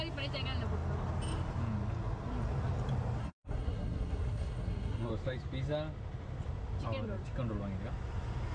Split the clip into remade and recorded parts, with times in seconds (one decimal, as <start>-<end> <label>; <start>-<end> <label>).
0.0-3.2 recorded; 3.2-5.1 remade; 5.1-8.5 recorded